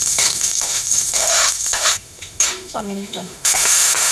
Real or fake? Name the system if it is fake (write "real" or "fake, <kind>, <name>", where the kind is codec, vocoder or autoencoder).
fake, autoencoder, DAC-VAE